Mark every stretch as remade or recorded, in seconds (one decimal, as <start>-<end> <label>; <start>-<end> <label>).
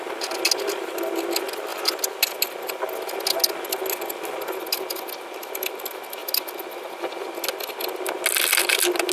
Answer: 0.0-9.1 recorded